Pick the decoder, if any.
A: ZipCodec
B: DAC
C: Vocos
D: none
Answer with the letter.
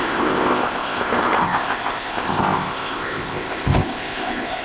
A